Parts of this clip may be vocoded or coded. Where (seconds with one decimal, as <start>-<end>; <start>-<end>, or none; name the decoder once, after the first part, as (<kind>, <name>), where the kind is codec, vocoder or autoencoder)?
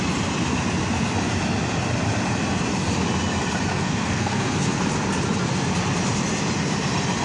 3.7-4.8 (codec, SNAC)